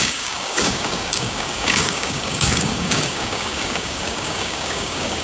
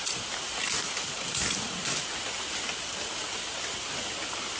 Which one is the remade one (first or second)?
first